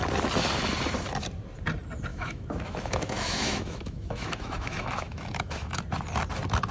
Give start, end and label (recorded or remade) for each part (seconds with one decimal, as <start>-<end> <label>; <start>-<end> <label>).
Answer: 0.0-2.1 recorded; 2.1-5.8 remade; 5.8-6.7 recorded